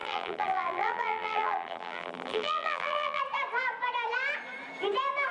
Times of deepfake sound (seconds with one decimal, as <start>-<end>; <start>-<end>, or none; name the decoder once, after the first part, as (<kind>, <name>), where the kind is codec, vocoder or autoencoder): 0.0-3.2 (vocoder, BigVGAN v2)